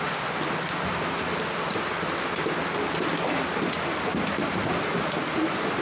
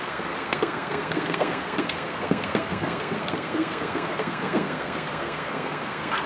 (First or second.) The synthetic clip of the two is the second